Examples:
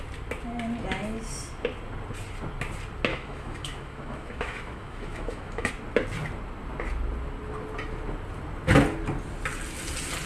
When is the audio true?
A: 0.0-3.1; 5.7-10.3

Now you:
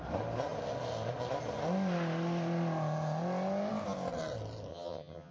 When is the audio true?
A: 0.0-4.7

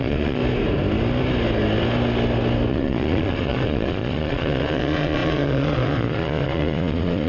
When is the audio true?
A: 0.4-2.7

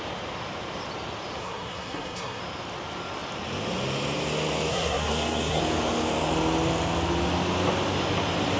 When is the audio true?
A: 0.0-1.4; 2.4-4.7; 5.6-8.6

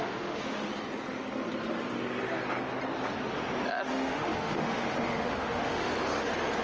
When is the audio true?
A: 0.7-3.9; 5.9-6.6

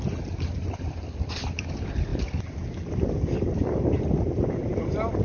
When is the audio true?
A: 0.0-5.2